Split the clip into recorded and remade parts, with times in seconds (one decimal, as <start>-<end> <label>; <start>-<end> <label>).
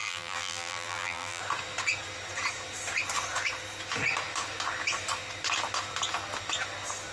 0.0-1.4 remade; 1.4-7.1 recorded